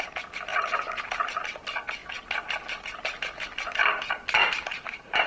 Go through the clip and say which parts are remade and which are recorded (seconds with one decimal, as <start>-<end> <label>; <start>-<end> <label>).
0.0-0.5 recorded; 0.5-1.0 remade; 1.0-4.4 recorded; 4.4-5.3 remade